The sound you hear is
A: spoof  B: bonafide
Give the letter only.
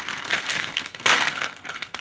A